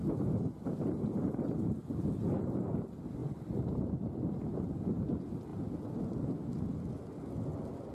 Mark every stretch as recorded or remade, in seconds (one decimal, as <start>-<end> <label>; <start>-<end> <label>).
0.0-1.4 remade; 1.4-3.2 recorded; 3.2-4.4 remade; 4.4-7.9 recorded